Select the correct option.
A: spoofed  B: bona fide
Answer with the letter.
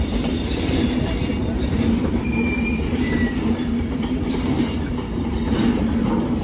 A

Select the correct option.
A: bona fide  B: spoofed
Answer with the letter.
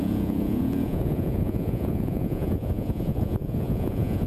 B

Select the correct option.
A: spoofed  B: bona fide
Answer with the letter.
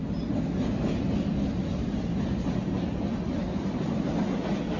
B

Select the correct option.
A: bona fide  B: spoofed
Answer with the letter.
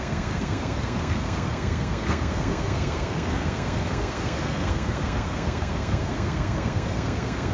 B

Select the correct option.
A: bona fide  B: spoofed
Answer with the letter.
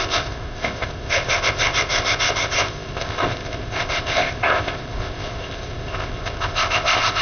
B